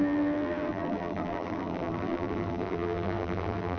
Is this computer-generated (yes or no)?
yes